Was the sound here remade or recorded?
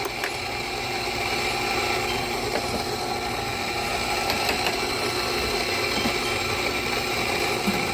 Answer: recorded